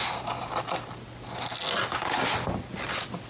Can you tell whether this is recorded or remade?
recorded